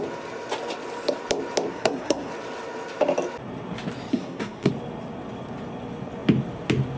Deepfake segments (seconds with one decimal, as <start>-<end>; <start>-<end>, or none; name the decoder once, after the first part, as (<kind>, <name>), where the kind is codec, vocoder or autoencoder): 1.7-2.3 (codec, SNAC); 4.1-4.7